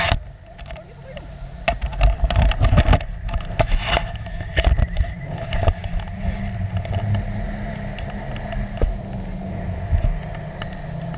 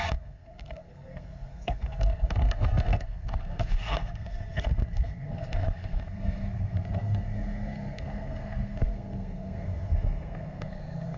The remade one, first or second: second